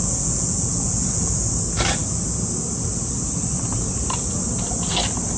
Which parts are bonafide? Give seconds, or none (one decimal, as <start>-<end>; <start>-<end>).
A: 1.3-5.4